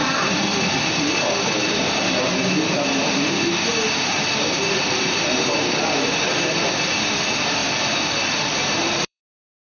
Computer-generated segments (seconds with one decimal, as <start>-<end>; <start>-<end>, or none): 0.0-1.2; 7.6-9.2